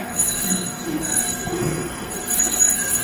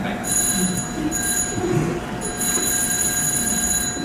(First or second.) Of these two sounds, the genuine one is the second